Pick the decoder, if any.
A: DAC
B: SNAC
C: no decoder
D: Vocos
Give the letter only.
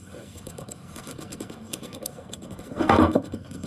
B